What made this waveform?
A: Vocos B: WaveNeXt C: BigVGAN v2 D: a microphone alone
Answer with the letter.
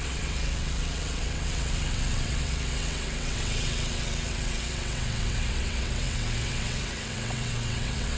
B